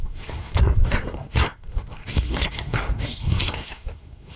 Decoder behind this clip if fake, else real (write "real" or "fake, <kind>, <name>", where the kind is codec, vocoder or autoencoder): fake, codec, SNAC